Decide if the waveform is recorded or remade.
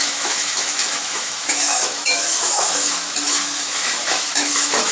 remade